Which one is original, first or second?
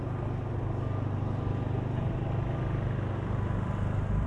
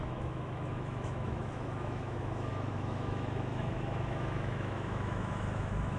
first